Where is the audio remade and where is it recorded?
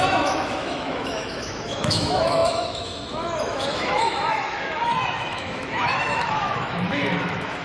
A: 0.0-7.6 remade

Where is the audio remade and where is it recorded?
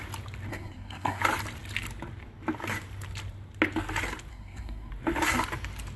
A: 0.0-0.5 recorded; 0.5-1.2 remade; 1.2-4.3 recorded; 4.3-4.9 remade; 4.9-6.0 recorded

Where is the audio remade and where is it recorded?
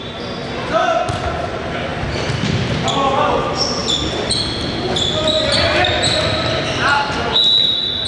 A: 0.0-1.9 recorded; 1.9-2.7 remade; 2.7-3.8 recorded; 3.8-4.4 remade; 4.4-8.1 recorded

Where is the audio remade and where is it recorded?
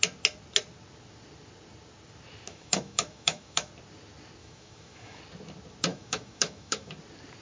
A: 0.0-2.5 recorded; 2.5-3.7 remade; 3.7-4.4 recorded; 4.4-5.2 remade; 5.2-5.9 recorded; 5.9-6.9 remade; 6.9-7.4 recorded